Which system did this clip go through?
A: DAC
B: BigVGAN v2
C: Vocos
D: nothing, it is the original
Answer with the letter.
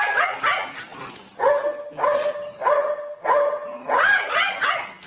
D